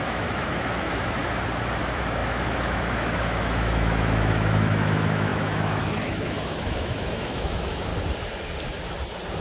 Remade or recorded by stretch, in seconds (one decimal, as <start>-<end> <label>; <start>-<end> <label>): 0.0-1.2 remade; 1.2-1.8 recorded; 1.8-7.9 remade; 7.9-9.4 recorded